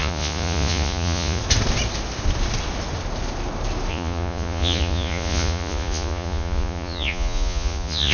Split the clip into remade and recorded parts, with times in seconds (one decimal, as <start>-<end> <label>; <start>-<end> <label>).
0.0-1.4 remade; 1.4-3.9 recorded; 3.9-8.1 remade